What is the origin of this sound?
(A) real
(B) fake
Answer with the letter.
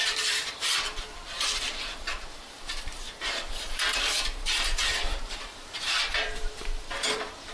B